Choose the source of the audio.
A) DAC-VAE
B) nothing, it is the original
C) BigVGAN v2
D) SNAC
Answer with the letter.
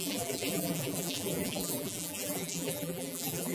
C